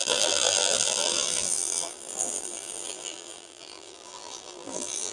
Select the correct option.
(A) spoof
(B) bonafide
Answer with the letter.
A